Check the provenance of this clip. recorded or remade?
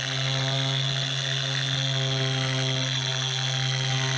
recorded